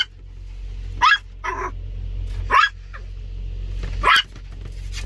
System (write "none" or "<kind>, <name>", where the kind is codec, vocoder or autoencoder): none